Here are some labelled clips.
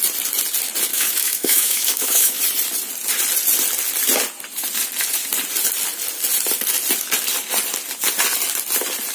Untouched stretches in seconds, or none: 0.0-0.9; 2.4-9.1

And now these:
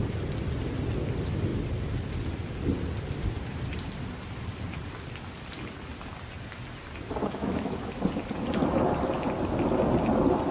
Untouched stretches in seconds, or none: 0.0-7.2; 8.0-10.5

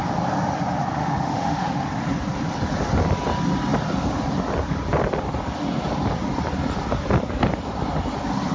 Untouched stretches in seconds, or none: 0.0-1.0; 1.9-8.5

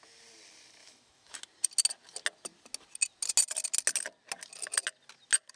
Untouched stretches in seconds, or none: 0.0-0.8; 1.4-5.6

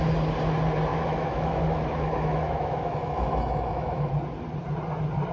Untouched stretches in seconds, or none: 0.0-0.9; 4.1-5.3

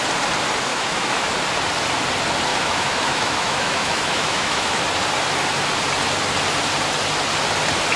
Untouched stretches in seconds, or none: 0.0-0.7; 1.3-2.5; 4.8-8.0

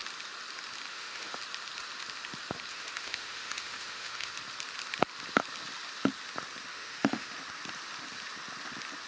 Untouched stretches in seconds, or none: 0.0-0.9; 1.4-2.7; 4.3-6.7; 7.3-9.1